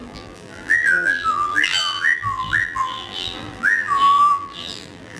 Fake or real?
fake